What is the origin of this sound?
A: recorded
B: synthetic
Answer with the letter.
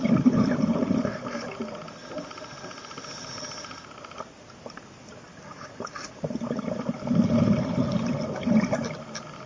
A